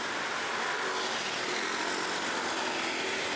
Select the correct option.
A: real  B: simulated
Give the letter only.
A